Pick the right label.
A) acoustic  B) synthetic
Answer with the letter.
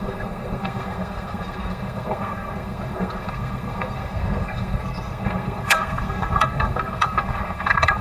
B